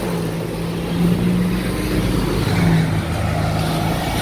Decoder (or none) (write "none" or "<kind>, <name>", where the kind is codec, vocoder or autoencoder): none